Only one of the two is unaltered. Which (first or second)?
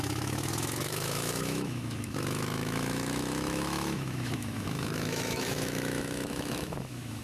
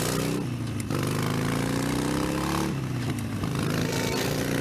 second